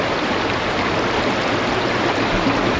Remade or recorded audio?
recorded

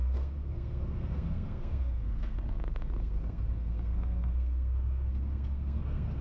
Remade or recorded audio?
remade